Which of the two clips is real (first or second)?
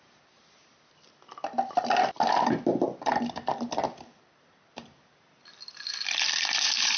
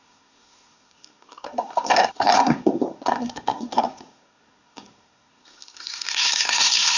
first